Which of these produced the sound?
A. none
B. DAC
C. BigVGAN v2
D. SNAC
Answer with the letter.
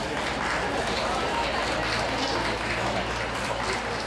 A